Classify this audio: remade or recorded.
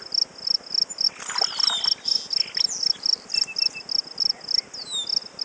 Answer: recorded